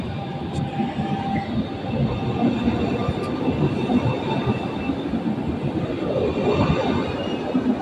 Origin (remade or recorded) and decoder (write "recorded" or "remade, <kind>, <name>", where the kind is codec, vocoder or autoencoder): recorded